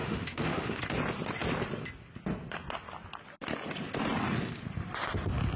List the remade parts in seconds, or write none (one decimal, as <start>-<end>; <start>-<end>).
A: 0.0-0.8